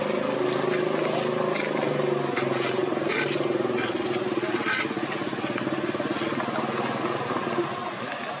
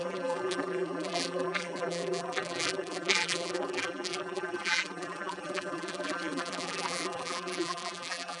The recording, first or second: first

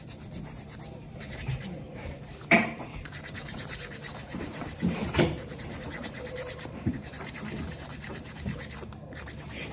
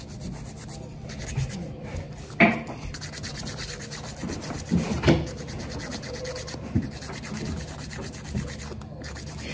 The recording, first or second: second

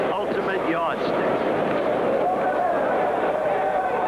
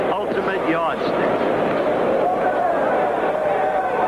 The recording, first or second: second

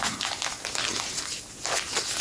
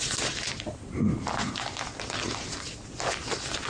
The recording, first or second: first